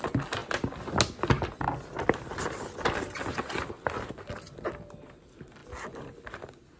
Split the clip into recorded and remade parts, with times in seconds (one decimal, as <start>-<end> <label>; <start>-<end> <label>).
0.0-6.8 recorded